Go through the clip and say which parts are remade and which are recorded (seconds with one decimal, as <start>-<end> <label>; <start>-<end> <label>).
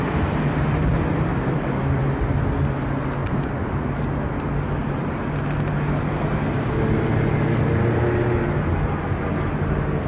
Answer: 0.0-1.3 recorded; 1.3-2.0 remade; 2.0-3.2 recorded; 3.2-4.3 remade; 4.3-4.8 recorded; 4.8-5.4 remade; 5.4-10.1 recorded